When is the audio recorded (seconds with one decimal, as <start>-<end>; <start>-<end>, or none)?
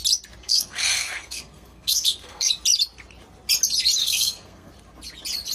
0.0-0.4; 2.5-4.0; 4.7-5.5